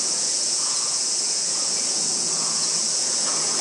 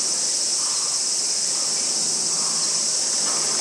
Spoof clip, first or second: first